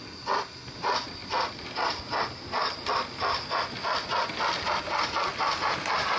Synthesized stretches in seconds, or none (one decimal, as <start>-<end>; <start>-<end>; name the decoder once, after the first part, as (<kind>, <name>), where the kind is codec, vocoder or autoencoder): none